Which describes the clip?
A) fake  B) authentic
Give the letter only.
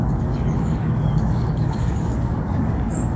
A